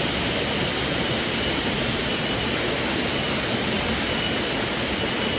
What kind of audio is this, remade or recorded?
recorded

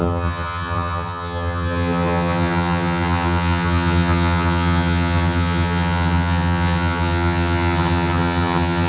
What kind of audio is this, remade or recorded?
remade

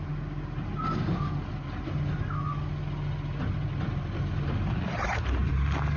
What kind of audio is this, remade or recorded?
recorded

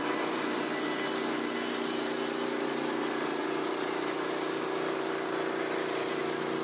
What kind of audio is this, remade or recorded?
recorded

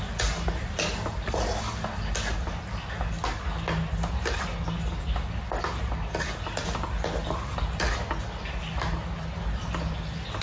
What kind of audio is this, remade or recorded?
recorded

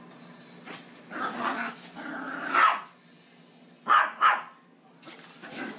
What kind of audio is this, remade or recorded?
recorded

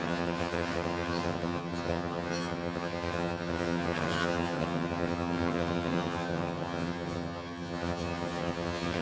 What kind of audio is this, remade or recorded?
remade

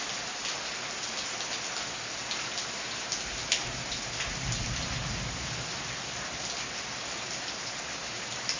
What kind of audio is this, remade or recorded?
recorded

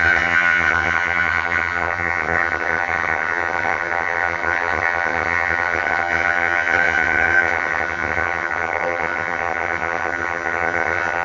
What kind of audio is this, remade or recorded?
remade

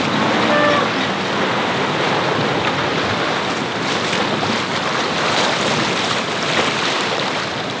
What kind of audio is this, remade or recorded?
recorded